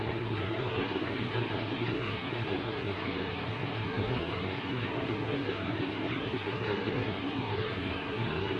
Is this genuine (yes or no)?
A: no